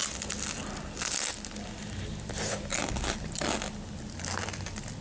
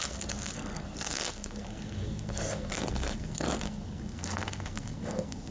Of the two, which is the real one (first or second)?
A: first